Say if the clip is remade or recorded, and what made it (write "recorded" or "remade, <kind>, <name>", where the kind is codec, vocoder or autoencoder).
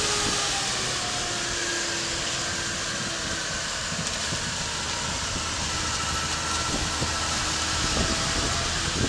recorded